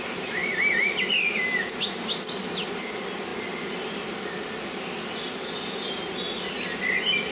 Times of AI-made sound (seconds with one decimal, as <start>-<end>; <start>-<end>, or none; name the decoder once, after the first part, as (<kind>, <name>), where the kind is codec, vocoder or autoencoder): none